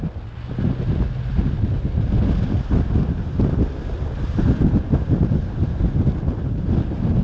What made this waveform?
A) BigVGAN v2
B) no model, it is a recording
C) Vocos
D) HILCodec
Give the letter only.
B